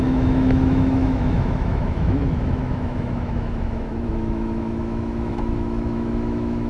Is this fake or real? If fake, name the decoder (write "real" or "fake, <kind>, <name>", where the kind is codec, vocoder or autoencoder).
fake, autoencoder, DAC-VAE